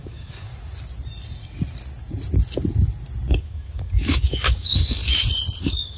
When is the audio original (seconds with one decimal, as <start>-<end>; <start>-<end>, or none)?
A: 0.5-3.4; 5.0-5.6